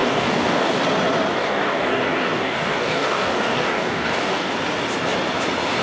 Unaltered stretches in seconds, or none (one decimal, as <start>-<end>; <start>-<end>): 0.8-1.3; 4.5-5.8